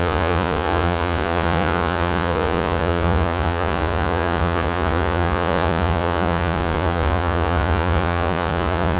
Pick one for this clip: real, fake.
fake